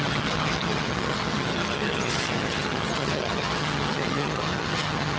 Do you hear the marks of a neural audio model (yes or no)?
yes